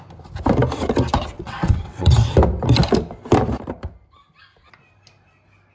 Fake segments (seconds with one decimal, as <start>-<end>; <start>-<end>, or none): 1.3-2.1